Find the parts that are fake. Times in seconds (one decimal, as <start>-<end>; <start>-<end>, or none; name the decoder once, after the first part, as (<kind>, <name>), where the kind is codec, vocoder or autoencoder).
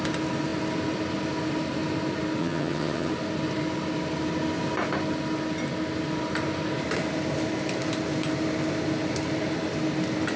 2.4-3.1 (vocoder, HiFi-GAN)